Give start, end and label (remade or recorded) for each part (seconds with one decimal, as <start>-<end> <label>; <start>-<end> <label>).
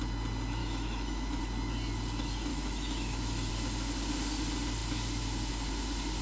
0.0-0.6 recorded; 0.6-1.4 remade; 1.4-2.5 recorded; 2.5-3.5 remade; 3.5-6.2 recorded